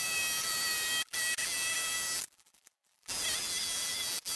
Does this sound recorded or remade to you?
remade